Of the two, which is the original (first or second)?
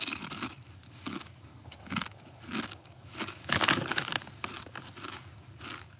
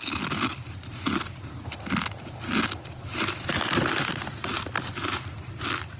second